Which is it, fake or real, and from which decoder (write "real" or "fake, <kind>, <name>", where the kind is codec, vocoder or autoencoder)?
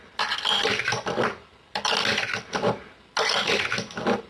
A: real